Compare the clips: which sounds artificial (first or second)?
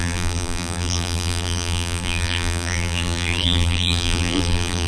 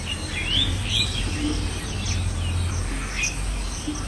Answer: first